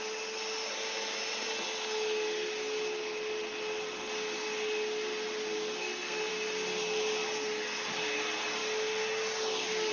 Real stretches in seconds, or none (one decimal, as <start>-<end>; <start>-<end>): 0.0-5.8; 6.3-9.9